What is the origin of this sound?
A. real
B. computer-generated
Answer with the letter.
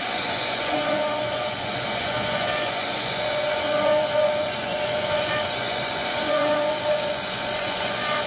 B